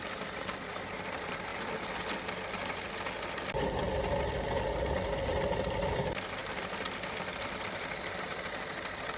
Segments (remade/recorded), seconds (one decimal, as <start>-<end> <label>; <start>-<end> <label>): 0.0-1.5 remade; 1.5-4.8 recorded; 4.8-9.2 remade